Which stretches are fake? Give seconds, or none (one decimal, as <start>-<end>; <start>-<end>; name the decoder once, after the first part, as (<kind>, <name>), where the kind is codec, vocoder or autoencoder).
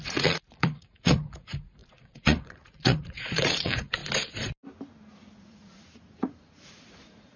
0.0-4.0 (vocoder, Vocos); 5.4-7.4